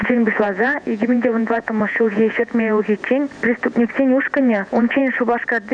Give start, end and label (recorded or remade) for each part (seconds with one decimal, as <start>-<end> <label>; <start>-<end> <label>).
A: 0.0-2.8 remade; 2.8-4.4 recorded; 4.4-5.0 remade; 5.0-5.7 recorded